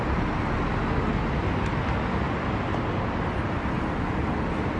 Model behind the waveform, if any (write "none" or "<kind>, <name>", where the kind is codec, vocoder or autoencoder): none